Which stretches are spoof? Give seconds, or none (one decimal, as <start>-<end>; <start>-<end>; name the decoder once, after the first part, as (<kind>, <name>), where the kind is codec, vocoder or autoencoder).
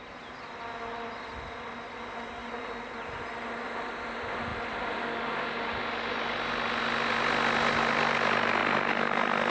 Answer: none